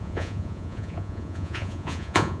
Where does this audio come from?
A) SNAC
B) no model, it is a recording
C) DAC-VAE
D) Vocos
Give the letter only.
D